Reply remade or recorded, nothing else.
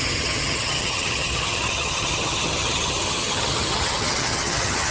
remade